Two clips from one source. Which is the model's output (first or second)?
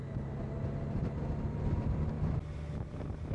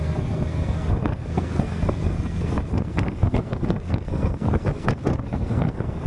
second